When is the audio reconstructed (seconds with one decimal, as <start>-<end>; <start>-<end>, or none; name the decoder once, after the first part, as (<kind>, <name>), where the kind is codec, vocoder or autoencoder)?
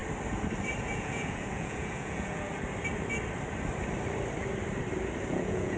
0.8-2.5 (vocoder, Vocos); 5.3-5.8